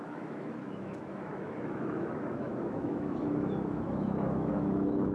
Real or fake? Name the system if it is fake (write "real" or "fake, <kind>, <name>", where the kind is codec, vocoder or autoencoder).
fake, autoencoder, DAC-VAE